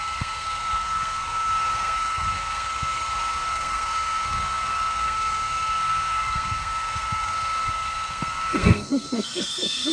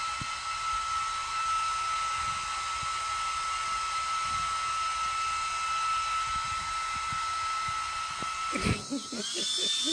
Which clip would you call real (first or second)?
second